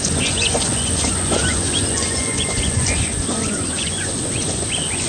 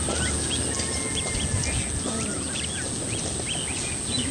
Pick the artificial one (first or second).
first